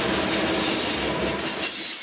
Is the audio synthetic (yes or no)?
no